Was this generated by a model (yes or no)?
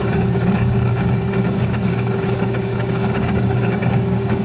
yes